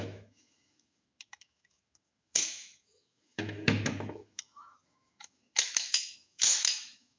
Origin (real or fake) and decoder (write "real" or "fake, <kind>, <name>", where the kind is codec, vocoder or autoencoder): fake, autoencoder, DAC-VAE